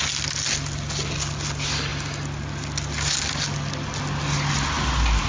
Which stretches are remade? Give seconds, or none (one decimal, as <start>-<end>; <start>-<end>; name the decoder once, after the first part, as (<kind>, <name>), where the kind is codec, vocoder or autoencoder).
none